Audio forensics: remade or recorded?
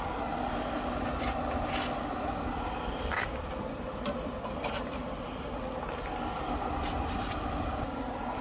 recorded